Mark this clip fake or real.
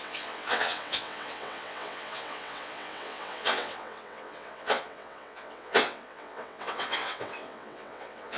fake